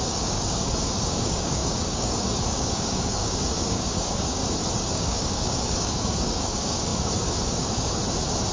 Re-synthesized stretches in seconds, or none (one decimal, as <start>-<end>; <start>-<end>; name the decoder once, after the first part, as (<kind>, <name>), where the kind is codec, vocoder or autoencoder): 0.0-4.4 (codec, DAC); 4.9-8.0

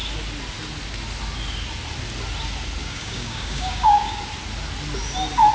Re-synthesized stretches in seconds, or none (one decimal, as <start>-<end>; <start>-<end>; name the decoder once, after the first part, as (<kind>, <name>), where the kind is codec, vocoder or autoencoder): 2.8-4.2 (codec, DAC)

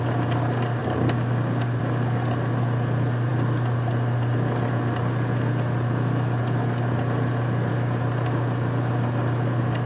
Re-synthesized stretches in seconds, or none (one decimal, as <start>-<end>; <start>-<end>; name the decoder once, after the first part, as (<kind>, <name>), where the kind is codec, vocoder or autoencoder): 0.8-1.8 (codec, DAC)

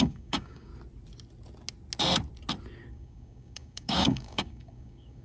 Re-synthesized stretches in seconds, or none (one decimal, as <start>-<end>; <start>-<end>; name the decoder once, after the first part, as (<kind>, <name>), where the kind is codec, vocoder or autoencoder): 0.0-0.7 (codec, DAC); 2.9-5.2

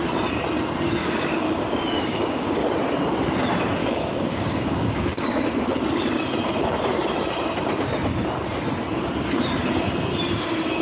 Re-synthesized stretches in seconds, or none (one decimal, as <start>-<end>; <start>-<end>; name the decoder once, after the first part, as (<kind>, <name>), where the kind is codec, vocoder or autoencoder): 1.0-2.7 (codec, DAC); 3.8-5.4